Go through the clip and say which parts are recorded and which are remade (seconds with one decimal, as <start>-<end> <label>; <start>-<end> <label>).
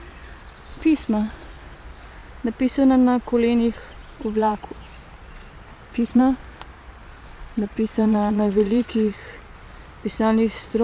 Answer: 0.0-4.0 recorded; 4.0-4.6 remade; 4.6-5.3 recorded; 5.3-6.2 remade; 6.2-7.0 recorded; 7.0-9.8 remade; 9.8-10.8 recorded